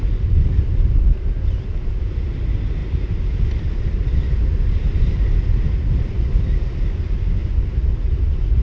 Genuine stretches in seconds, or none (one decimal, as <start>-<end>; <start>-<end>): 0.0-8.6